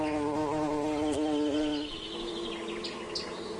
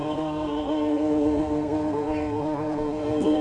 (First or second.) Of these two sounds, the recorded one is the first